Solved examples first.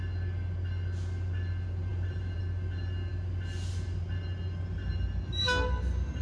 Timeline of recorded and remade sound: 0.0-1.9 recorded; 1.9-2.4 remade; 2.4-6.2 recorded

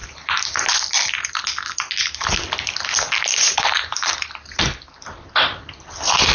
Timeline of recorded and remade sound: 0.0-0.7 remade; 0.7-3.3 recorded; 3.3-4.6 remade; 4.6-6.3 recorded